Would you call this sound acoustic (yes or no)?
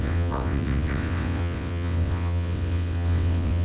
no